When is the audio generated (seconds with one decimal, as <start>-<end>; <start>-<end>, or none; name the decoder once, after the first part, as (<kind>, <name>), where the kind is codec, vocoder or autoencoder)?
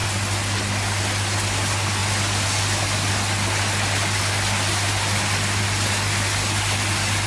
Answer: none